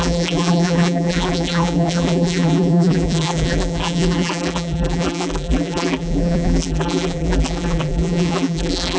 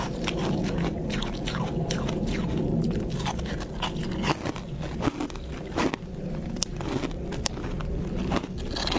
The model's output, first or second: first